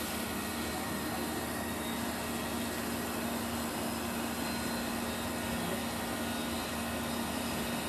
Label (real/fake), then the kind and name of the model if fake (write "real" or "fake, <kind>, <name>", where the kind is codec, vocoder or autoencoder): real